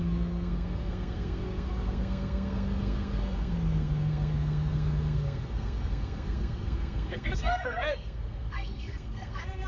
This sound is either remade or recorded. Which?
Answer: remade